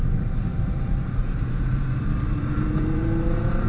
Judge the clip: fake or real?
fake